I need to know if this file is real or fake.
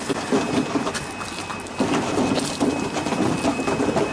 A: real